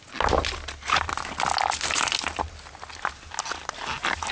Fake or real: real